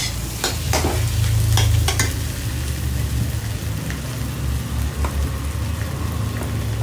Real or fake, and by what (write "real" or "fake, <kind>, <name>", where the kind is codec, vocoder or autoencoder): real